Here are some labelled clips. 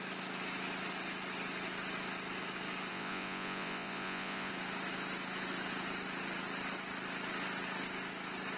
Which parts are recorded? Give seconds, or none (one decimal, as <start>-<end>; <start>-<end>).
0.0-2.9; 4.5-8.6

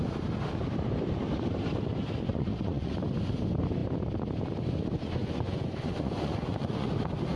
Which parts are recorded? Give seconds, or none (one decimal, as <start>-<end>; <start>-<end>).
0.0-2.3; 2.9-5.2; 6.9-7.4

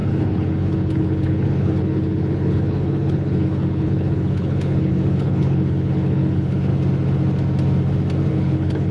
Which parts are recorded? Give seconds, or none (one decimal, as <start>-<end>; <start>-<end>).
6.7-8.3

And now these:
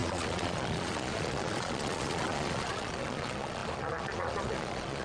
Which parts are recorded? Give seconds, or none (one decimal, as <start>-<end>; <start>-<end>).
none

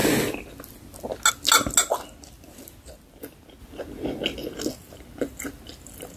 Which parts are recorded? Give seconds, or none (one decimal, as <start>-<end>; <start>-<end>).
0.0-6.2